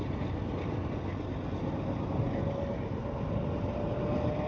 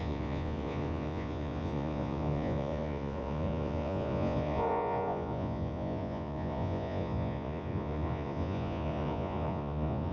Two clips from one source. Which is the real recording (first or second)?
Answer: first